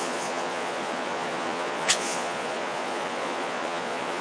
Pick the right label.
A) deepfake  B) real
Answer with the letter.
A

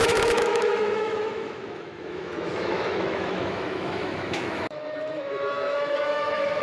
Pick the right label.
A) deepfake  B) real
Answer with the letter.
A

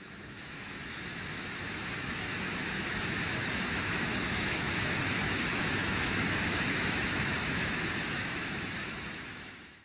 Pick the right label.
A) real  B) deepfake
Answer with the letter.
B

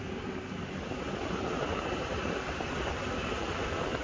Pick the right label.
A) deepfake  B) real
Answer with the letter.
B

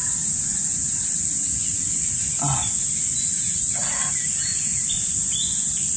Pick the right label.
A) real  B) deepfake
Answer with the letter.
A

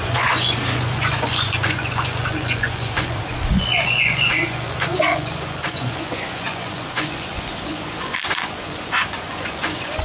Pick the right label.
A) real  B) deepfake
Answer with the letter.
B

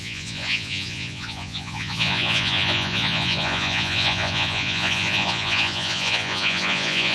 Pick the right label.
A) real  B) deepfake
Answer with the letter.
B